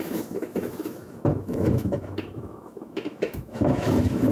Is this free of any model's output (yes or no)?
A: no